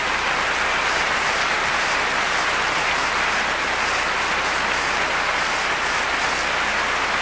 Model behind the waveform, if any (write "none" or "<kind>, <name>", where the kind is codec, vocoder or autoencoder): none